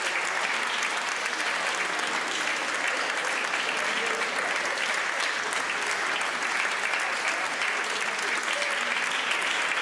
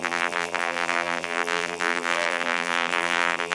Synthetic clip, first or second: second